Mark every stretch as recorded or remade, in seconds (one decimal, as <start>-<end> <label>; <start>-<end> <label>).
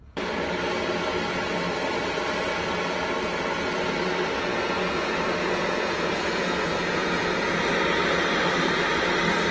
0.0-4.5 recorded; 4.5-7.6 remade; 7.6-9.5 recorded